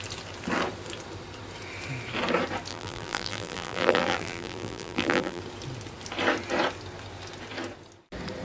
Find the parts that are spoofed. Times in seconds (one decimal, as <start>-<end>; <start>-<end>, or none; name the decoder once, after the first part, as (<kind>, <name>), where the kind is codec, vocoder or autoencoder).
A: 2.7-5.4 (vocoder, BigVGAN v2)